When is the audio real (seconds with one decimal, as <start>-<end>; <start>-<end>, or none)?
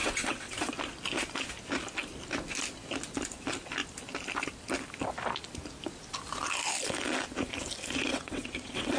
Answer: 0.7-8.1